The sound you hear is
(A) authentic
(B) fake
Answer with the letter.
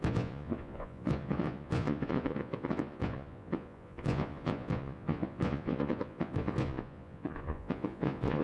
B